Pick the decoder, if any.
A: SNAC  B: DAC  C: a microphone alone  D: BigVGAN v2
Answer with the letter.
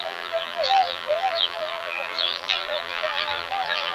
D